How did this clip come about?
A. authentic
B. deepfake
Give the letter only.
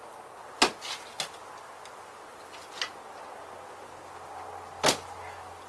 A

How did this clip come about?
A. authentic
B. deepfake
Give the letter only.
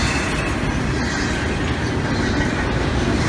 A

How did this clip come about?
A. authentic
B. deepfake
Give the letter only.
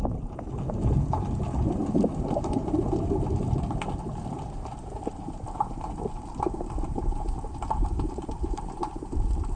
A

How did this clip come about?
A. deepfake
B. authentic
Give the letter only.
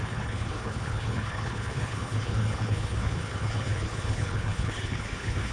A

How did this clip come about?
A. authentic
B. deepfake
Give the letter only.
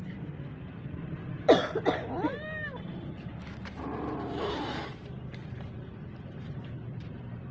B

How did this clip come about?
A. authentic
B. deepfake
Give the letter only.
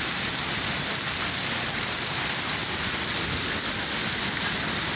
A